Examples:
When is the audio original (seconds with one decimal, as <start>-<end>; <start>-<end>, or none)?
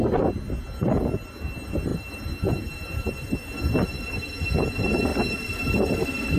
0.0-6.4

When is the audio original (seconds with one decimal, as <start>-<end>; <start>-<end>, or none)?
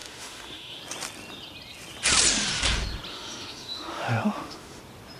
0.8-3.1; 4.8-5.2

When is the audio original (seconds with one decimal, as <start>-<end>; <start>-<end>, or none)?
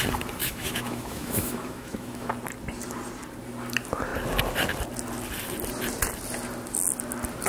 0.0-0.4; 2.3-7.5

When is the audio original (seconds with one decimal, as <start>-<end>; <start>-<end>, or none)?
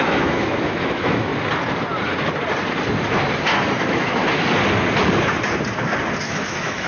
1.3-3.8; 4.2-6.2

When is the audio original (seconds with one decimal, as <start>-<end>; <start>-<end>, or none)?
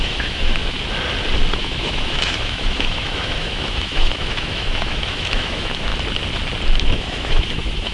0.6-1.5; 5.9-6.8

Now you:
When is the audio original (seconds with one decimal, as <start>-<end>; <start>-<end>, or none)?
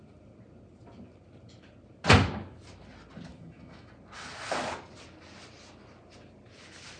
0.0-3.3; 3.9-7.0